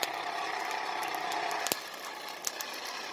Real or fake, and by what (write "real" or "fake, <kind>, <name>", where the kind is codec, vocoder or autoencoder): real